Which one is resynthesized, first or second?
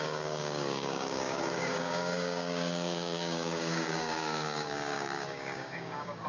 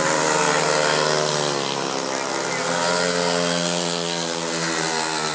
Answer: first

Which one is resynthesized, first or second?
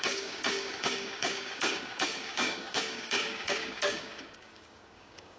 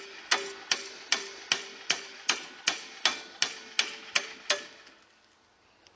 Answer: first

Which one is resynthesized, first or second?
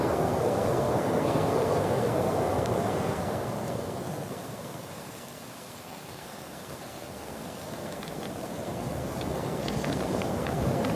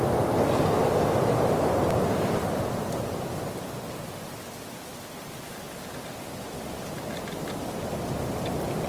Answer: first